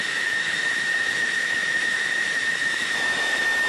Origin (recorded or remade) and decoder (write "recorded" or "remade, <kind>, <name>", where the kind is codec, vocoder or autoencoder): remade, autoencoder, DAC-VAE